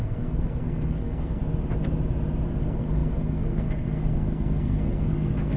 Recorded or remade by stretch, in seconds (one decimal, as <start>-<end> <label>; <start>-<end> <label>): 0.0-1.4 remade; 1.4-2.6 recorded; 2.6-5.6 remade